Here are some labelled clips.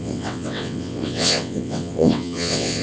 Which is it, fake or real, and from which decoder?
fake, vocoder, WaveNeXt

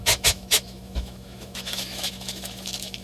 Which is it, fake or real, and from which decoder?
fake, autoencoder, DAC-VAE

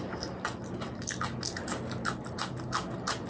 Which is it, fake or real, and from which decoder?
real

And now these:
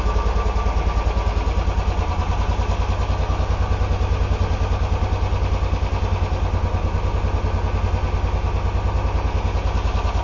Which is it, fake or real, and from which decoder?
real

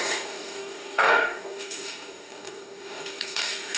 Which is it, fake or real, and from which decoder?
fake, codec, DAC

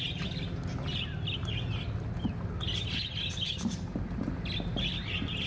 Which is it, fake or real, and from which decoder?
real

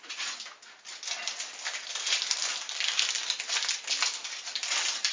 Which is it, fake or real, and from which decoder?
real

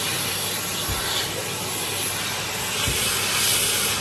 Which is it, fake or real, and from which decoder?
real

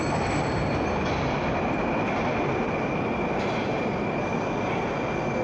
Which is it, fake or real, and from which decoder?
real